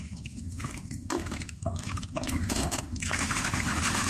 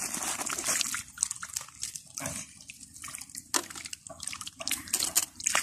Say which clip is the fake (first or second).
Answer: first